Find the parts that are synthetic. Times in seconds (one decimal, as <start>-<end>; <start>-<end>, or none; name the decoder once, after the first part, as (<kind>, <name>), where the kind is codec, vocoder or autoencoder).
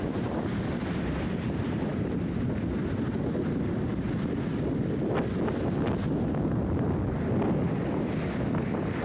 none